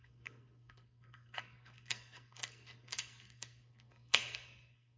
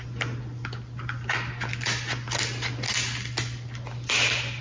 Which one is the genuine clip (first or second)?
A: second